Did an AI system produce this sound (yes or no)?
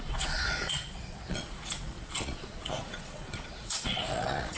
yes